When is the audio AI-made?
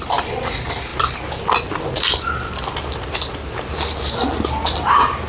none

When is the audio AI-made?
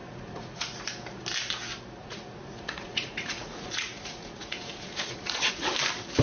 0.0-0.8 (vocoder, Vocos); 2.0-5.7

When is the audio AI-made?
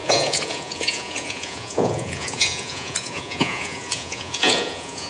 0.0-5.1 (vocoder, Vocos)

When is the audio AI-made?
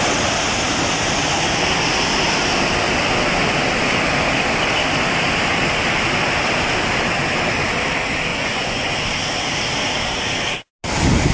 8.3-8.9 (vocoder, Vocos)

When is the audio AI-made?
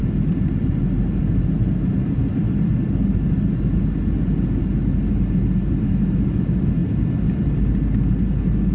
none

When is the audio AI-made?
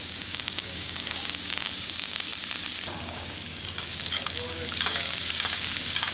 0.0-2.3 (codec, DAC); 2.9-6.1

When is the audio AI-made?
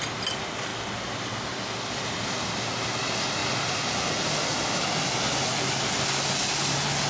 none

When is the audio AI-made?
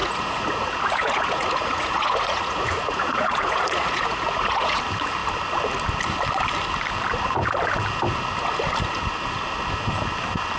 0.0-4.8 (vocoder, Vocos)